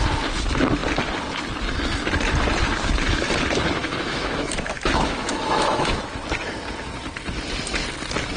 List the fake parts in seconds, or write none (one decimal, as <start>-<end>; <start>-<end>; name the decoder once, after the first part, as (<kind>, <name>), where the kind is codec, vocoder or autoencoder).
3.8-6.0 (autoencoder, DAC-VAE)